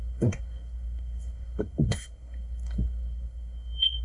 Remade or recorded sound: remade